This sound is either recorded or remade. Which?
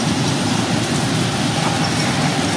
recorded